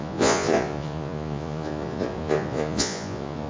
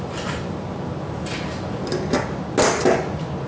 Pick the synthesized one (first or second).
first